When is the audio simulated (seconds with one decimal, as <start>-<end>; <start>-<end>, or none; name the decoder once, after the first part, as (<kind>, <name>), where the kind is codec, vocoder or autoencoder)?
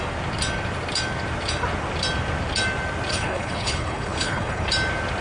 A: 3.1-4.7 (codec, HILCodec)